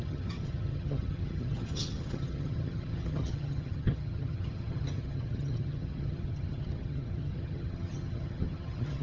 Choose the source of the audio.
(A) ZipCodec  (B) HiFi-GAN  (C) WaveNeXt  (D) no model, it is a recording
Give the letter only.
B